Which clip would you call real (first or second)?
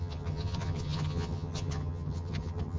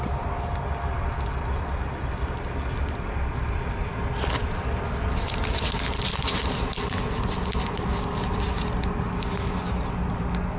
second